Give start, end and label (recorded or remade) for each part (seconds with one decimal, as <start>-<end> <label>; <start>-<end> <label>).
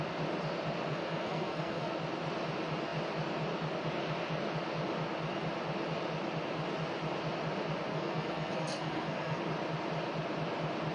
0.0-0.9 recorded; 0.9-1.9 remade; 1.9-7.9 recorded; 7.9-9.4 remade; 9.4-10.9 recorded